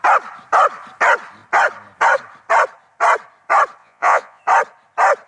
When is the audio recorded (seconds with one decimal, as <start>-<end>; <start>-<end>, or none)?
0.0-3.8; 4.4-5.3